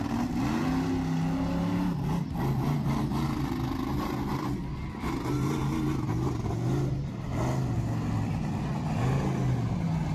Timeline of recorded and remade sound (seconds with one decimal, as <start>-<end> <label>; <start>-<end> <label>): 0.0-10.1 recorded

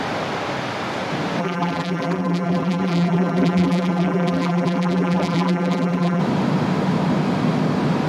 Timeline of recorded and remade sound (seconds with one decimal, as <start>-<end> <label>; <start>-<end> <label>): 0.0-1.4 recorded; 1.4-6.2 remade; 6.2-8.1 recorded

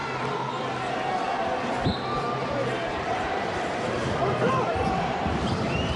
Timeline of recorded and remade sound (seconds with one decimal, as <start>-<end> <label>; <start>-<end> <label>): 0.0-2.4 recorded; 2.4-6.0 remade

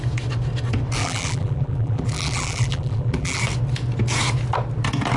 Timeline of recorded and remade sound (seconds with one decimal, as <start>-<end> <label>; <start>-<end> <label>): 0.0-1.0 recorded; 1.0-3.4 remade; 3.4-5.2 recorded

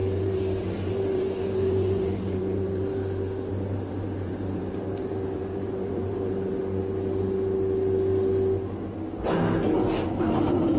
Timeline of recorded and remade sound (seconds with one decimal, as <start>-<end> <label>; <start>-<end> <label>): 0.0-3.0 remade; 3.0-3.5 recorded; 3.5-6.6 remade; 6.6-10.3 recorded; 10.3-10.8 remade